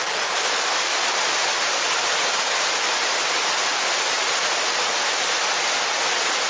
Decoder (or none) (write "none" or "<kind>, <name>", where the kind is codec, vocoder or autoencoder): none